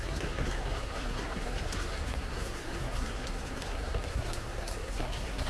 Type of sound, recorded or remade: remade